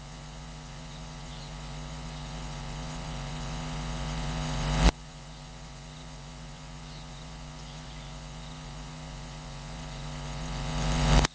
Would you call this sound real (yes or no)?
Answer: no